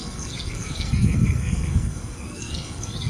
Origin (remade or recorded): remade